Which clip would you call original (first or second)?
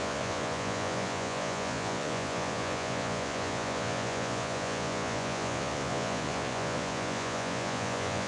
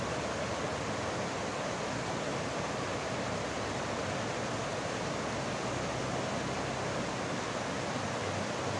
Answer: second